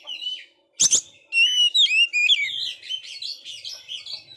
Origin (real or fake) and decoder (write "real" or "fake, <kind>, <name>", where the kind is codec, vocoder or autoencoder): real